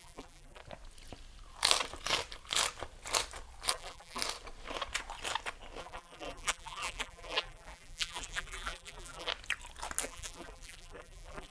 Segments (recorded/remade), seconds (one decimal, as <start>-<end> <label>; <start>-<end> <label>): 0.0-0.6 remade; 0.6-3.7 recorded; 3.7-4.2 remade; 4.2-5.8 recorded; 5.8-9.3 remade; 9.3-10.0 recorded; 10.0-11.5 remade